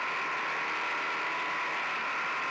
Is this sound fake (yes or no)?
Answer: no